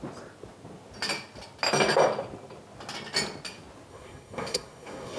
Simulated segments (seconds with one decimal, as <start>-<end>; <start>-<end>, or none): 3.9-5.2

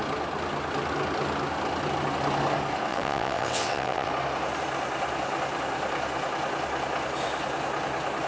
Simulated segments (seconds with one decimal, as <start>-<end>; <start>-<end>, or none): 2.9-4.1